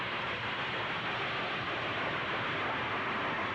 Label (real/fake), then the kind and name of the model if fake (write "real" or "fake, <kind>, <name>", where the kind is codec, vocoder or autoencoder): real